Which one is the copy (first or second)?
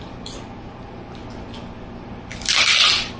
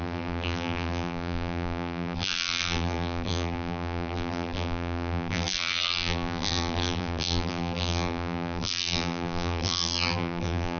second